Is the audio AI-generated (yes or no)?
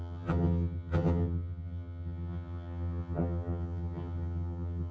yes